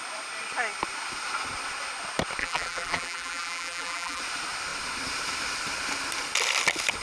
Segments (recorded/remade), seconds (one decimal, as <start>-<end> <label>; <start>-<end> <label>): 0.0-2.4 recorded; 2.4-4.2 remade; 4.2-7.0 recorded